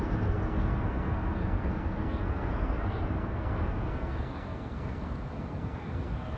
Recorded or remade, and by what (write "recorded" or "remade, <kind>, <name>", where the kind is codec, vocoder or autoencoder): remade, codec, SNAC